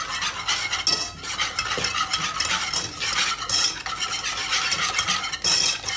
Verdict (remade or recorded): recorded